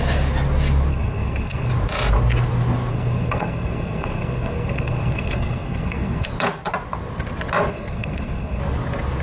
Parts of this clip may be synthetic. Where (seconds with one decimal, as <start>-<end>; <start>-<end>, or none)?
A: 0.9-1.7; 2.9-6.3; 7.7-8.6